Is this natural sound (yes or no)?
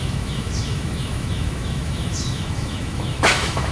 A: no